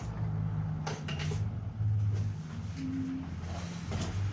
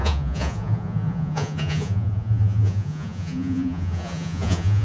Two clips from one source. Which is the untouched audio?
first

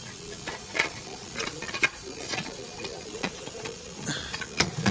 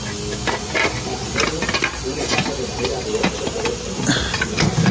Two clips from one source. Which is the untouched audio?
second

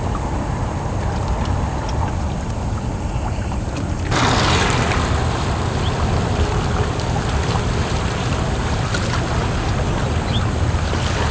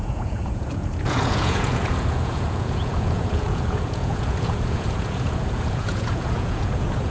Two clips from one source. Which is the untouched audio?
first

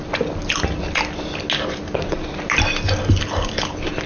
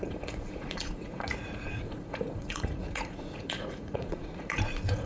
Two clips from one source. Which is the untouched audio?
first